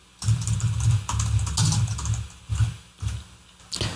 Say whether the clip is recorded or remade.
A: recorded